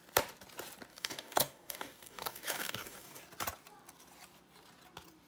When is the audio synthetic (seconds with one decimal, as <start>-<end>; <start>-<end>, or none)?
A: 0.9-3.2